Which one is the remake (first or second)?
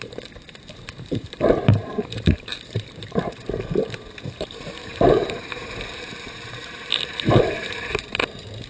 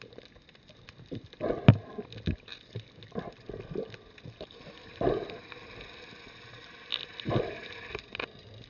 first